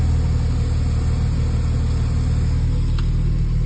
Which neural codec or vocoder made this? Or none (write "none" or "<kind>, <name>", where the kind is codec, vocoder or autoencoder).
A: none